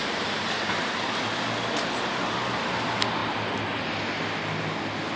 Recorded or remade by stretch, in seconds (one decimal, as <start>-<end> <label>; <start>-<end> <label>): 0.0-3.2 recorded; 3.2-4.6 remade; 4.6-5.2 recorded